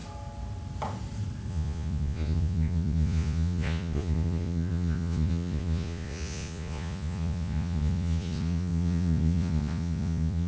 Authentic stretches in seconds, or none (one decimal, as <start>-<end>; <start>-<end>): 0.0-1.5